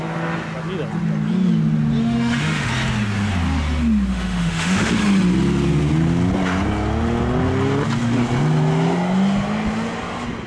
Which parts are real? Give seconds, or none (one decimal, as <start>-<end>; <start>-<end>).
0.0-2.0; 2.7-4.1; 4.9-10.5

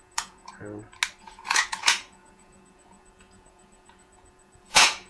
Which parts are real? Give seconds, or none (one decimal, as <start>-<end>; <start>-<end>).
0.5-1.2

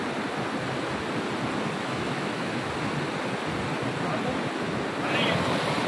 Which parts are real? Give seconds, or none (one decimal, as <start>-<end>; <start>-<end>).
0.0-1.8; 2.7-5.9

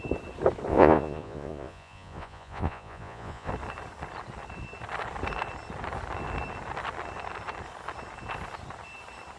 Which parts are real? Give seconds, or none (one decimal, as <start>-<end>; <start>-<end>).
0.0-0.7; 3.5-9.4

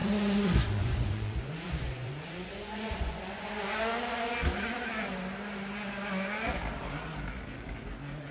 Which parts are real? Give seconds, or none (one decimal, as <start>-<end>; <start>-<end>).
3.5-8.3

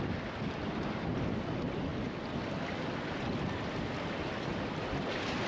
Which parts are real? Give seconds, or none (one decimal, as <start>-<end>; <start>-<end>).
0.0-5.5

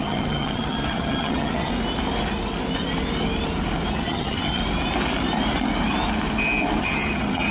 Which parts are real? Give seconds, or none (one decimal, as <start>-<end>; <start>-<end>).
1.7-3.9; 4.6-6.8

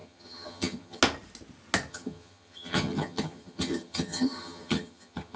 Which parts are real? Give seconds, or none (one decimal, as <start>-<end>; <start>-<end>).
1.0-1.9